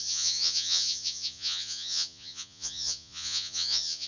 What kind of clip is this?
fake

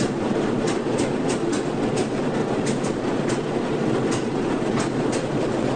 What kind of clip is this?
fake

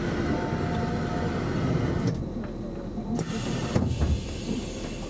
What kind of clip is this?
real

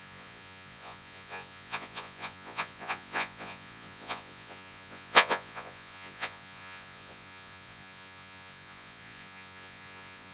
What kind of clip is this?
fake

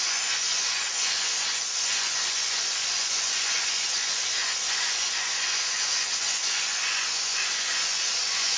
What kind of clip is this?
fake